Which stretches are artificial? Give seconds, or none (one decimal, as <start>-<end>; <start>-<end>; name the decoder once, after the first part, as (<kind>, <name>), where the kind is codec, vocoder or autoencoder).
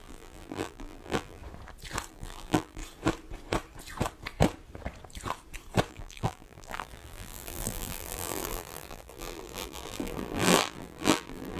0.0-1.4 (vocoder, BigVGAN v2); 2.1-2.8; 5.9-11.6